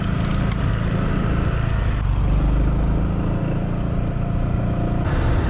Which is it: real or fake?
real